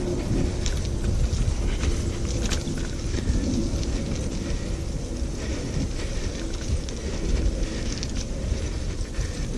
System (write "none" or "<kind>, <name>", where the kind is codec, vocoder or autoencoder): none